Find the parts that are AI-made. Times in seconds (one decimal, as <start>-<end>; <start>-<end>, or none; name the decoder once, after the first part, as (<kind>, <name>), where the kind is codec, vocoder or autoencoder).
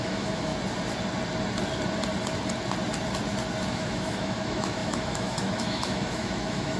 0.0-0.5 (autoencoder, DAC-VAE); 3.7-6.8